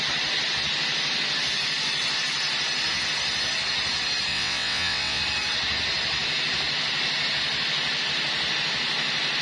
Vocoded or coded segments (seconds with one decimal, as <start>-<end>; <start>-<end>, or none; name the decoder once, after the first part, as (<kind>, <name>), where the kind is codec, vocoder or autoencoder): 4.3-5.2 (vocoder, WaveNeXt)